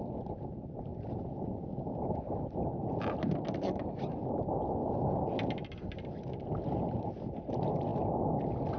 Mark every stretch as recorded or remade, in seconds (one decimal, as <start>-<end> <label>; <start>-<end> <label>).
0.0-8.8 recorded